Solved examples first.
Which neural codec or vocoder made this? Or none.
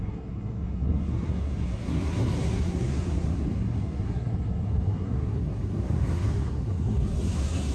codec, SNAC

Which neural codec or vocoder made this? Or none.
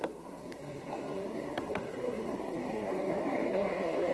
codec, SNAC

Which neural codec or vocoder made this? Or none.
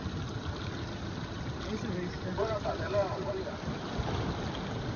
none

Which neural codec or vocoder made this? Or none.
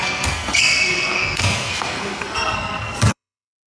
codec, SNAC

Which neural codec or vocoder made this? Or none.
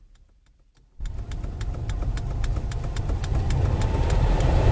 none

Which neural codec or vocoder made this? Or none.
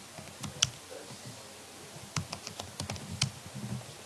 none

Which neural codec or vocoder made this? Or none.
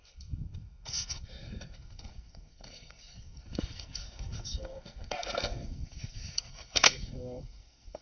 codec, SNAC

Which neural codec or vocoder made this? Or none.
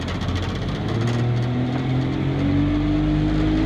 none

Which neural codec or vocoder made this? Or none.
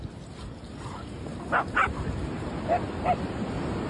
none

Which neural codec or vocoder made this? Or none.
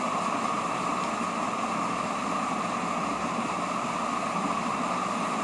none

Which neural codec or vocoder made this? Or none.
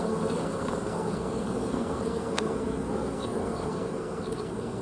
codec, SNAC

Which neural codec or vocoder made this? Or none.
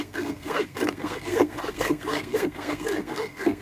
codec, SNAC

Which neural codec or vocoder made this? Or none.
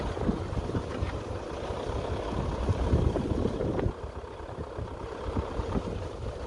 none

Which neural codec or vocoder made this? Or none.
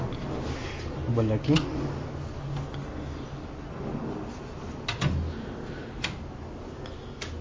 none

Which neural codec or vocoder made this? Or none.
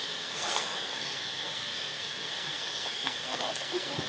codec, SNAC